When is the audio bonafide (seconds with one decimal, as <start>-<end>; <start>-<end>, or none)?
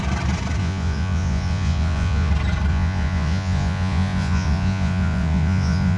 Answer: 0.0-0.6; 2.3-2.7